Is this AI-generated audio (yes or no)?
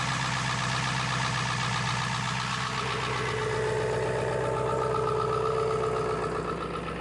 no